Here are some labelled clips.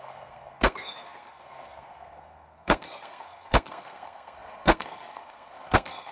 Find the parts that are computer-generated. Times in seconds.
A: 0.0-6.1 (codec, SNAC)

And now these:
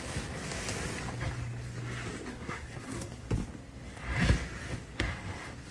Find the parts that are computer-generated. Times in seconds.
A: 2.3-3.3 (codec, SNAC)

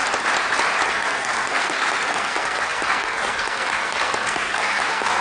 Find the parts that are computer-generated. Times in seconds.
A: 0.9-5.2 (codec, SNAC)